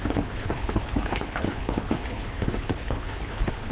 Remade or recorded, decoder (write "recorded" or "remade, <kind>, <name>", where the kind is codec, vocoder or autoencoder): remade, codec, HILCodec